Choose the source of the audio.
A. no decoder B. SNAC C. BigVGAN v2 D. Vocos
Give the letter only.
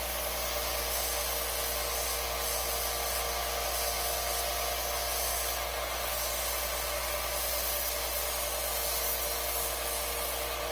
A